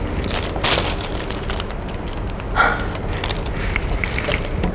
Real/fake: real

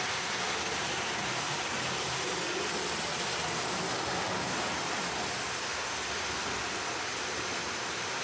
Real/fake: real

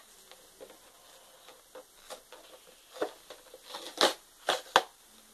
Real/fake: real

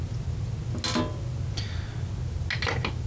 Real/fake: real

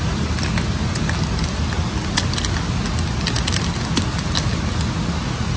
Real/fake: real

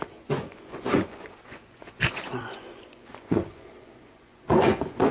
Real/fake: fake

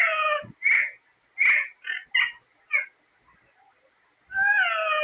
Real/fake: real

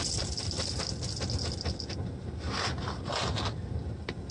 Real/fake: real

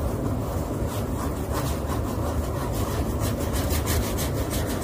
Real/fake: real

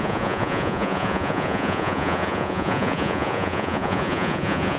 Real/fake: fake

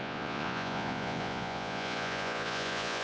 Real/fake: fake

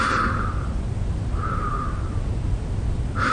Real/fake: real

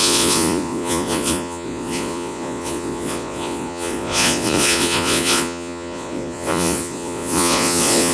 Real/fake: fake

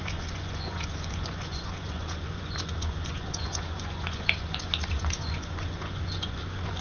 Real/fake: fake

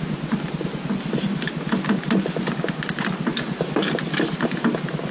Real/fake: real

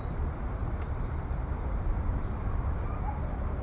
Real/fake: real